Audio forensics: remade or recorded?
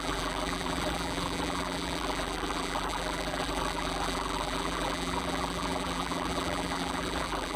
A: remade